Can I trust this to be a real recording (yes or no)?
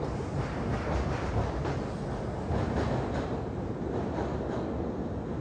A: yes